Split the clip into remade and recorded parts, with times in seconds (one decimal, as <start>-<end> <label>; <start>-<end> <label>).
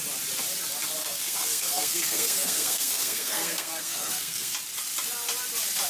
0.0-1.0 recorded; 1.0-4.5 remade; 4.5-5.9 recorded